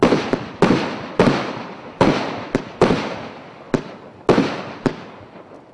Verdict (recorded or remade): recorded